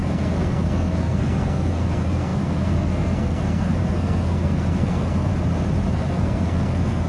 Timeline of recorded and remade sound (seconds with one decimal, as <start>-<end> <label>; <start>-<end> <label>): 0.0-5.3 remade; 5.3-5.9 recorded; 5.9-7.1 remade